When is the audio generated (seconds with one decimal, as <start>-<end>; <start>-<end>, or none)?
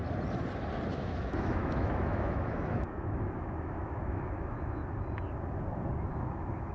0.9-4.8; 6.1-6.7